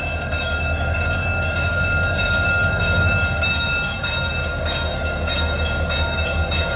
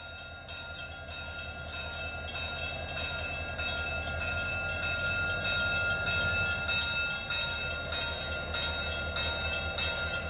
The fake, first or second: first